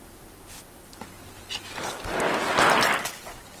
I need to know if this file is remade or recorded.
recorded